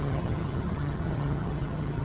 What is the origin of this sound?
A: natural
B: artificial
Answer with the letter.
B